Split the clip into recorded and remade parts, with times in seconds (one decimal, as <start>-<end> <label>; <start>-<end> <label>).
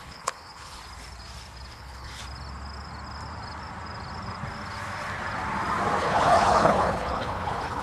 0.0-0.8 remade; 0.8-1.7 recorded; 1.7-2.2 remade; 2.2-6.0 recorded; 6.0-7.8 remade